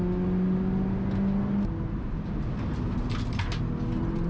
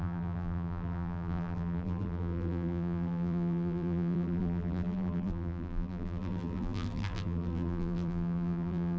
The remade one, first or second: second